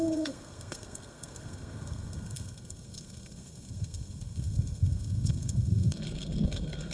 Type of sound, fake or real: fake